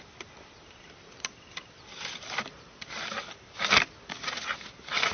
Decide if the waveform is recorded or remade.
recorded